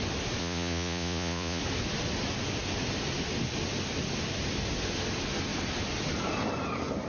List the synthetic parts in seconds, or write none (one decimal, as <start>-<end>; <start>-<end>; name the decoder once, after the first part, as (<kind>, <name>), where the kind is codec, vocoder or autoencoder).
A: 0.4-1.6 (vocoder, Vocos)